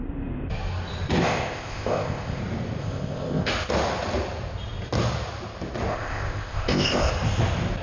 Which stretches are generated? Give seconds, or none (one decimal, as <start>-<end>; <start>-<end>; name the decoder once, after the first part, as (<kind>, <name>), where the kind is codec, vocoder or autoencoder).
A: 1.1-2.4 (codec, ZipCodec); 2.8-3.5; 5.9-7.1